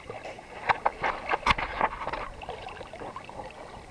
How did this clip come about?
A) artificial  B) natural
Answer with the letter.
B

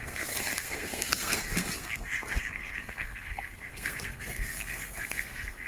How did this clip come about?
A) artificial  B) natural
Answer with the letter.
A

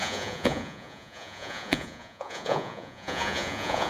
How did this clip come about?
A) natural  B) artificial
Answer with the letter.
B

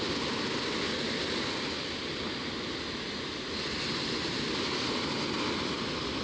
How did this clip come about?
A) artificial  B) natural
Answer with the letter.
B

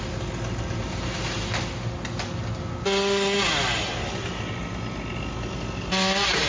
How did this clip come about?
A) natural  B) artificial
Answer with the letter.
A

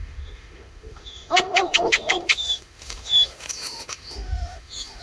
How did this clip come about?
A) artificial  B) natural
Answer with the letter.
A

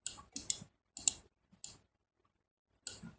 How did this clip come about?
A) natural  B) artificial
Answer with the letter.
A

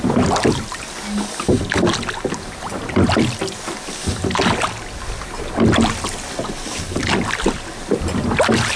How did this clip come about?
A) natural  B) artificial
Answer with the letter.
A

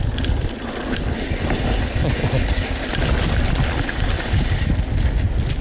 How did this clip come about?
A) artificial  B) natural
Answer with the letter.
B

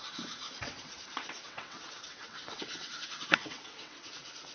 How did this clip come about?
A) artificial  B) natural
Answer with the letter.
A